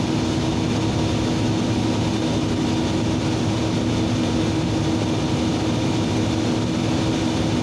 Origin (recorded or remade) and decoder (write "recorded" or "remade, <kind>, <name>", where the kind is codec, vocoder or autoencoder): recorded